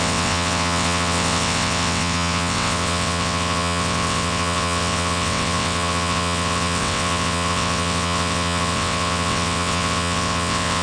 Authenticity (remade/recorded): remade